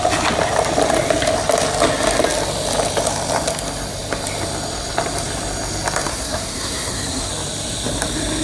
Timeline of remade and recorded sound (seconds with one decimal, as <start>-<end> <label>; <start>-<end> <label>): 0.0-6.1 recorded; 6.1-7.3 remade; 7.3-8.4 recorded